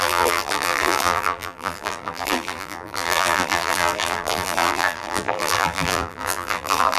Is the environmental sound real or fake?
fake